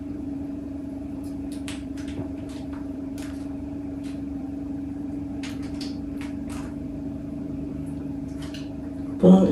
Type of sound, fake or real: fake